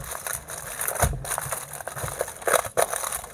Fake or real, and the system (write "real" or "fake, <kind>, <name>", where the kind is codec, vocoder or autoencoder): real